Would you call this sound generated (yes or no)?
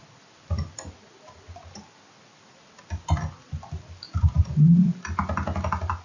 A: no